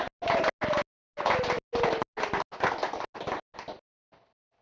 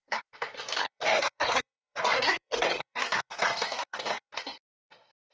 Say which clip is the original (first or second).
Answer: first